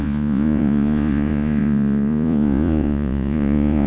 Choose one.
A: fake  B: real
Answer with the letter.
A